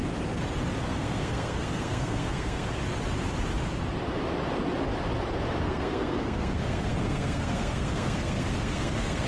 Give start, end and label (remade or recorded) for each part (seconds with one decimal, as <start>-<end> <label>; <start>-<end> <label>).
0.0-0.8 recorded; 0.8-2.8 remade; 2.8-5.6 recorded; 5.6-9.3 remade